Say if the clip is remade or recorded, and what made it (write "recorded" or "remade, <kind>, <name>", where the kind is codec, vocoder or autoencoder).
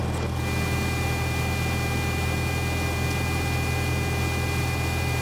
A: recorded